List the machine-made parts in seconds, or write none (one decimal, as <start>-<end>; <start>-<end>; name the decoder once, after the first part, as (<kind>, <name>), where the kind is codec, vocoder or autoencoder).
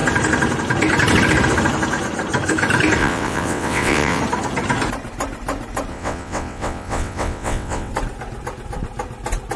3.0-4.2 (vocoder, WaveNeXt); 5.9-7.9